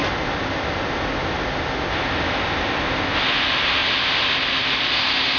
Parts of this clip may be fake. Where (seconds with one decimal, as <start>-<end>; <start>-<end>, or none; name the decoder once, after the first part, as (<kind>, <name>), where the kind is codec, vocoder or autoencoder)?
none

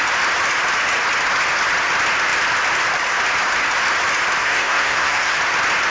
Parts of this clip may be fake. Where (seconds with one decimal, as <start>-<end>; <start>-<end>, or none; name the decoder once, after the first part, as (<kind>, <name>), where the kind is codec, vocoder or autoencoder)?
4.4-5.4 (codec, SNAC)

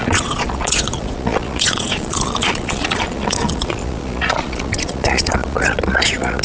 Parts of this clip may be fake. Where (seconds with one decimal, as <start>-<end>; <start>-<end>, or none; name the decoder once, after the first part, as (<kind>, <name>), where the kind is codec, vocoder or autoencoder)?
0.0-6.4 (vocoder, Vocos)